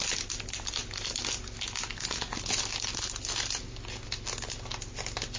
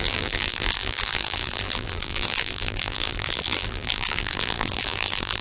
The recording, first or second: first